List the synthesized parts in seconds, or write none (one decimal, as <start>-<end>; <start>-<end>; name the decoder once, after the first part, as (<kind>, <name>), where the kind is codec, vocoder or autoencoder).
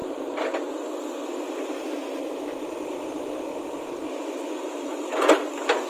none